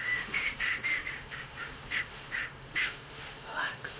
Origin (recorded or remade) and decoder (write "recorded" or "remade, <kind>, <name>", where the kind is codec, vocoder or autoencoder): remade, autoencoder, DAC-VAE